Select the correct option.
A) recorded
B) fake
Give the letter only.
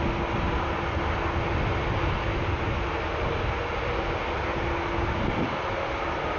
A